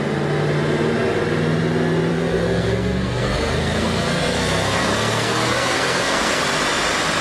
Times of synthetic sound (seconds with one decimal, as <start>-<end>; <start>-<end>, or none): 2.1-6.4